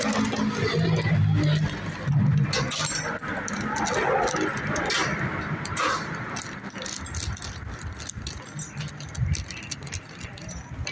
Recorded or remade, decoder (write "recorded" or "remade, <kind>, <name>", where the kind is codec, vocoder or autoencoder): recorded